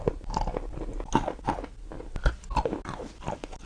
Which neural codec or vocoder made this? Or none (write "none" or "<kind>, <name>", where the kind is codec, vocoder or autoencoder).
none